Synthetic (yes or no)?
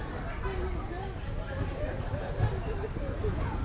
no